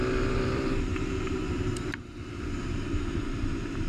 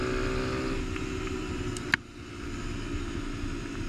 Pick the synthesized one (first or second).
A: first